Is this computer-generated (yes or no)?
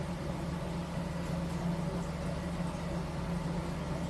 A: no